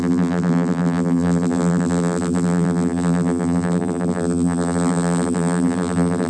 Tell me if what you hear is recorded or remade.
remade